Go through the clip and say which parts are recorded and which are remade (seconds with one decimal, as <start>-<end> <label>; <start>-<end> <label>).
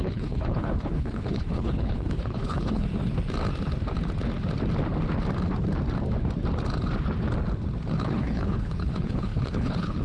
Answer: 0.0-2.9 remade; 2.9-8.0 recorded; 8.0-10.0 remade